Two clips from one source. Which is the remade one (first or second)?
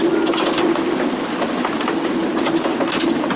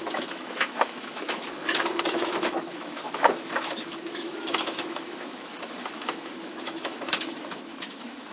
second